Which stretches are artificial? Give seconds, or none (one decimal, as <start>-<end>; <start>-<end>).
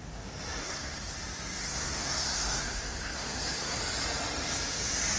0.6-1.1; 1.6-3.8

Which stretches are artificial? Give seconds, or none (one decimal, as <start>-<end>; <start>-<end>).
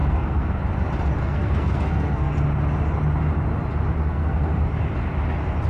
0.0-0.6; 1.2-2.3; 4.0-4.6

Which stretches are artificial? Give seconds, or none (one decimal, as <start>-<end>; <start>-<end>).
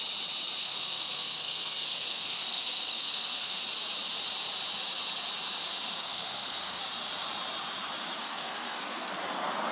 0.6-3.6; 6.0-6.8; 8.2-9.1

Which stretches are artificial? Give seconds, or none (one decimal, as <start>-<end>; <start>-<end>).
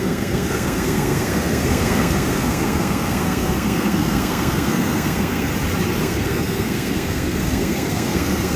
0.0-5.5; 6.0-8.6